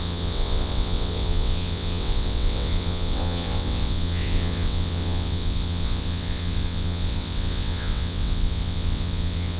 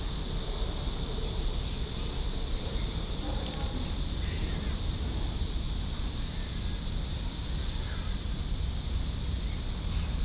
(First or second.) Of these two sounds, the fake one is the first